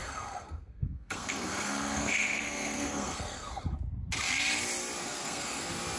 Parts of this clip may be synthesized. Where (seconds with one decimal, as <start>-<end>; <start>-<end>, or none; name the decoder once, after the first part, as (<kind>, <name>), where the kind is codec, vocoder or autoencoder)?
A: 0.0-3.6 (codec, SNAC); 5.0-5.6